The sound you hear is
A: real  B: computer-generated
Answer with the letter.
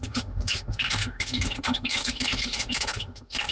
B